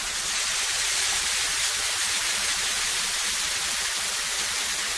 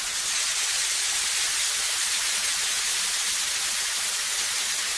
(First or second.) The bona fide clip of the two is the second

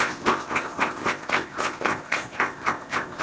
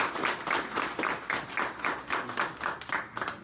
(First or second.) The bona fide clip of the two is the second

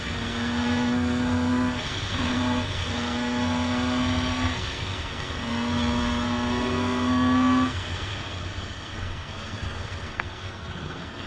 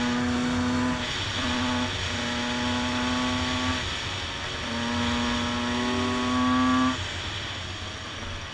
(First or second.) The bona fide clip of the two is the second